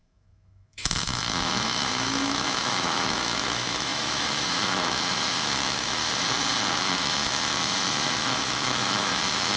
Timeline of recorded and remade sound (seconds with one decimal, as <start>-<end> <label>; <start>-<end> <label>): 0.0-6.0 remade; 6.0-6.8 recorded; 6.8-9.6 remade